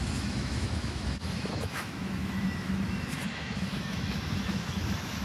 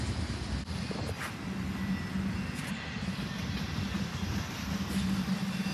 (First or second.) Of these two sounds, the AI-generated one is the first